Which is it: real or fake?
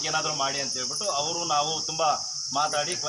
real